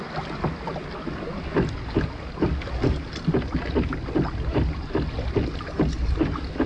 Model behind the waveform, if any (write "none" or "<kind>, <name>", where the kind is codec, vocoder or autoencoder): none